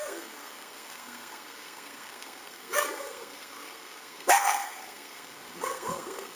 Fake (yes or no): yes